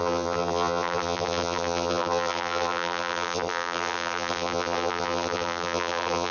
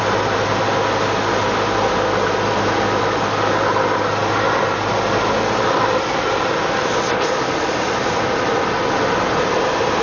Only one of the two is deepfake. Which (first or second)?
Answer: first